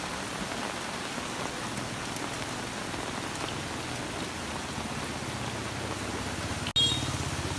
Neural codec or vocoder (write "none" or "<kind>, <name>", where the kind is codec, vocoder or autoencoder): none